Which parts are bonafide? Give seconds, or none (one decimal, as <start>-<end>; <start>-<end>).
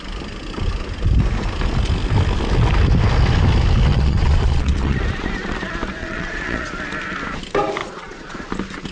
0.0-3.9; 5.0-6.0; 6.7-7.8; 8.5-8.9